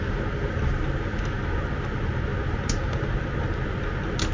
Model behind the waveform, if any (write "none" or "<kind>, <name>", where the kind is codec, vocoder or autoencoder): none